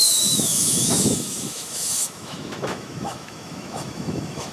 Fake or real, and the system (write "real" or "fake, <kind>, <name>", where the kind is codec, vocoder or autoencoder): fake, autoencoder, DAC-VAE